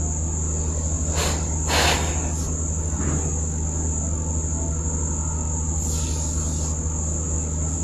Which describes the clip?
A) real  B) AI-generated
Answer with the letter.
A